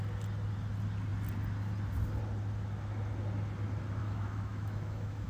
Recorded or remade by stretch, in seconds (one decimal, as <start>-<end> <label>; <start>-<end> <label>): 0.0-4.0 recorded; 4.0-5.3 remade